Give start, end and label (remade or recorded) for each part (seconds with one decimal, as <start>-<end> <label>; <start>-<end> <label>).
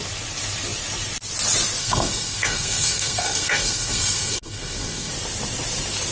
0.0-1.8 recorded; 1.8-5.1 remade; 5.1-6.1 recorded